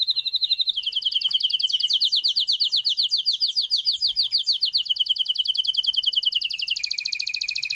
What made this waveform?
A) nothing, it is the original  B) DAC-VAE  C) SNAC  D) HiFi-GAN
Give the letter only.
A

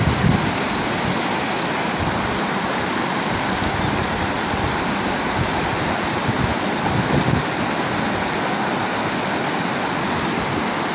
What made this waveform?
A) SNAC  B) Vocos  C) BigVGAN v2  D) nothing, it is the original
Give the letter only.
D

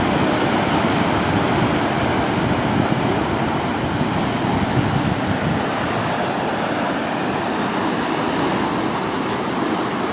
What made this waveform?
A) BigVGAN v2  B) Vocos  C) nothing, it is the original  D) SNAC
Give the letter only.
C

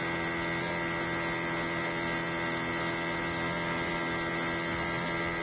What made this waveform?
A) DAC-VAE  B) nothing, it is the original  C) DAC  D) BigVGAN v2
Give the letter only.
B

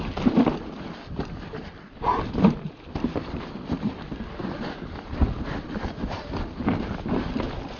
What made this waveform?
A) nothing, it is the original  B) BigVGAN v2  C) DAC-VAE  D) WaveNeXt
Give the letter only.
A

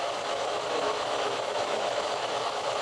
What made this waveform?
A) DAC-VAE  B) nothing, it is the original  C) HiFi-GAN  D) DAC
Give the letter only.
A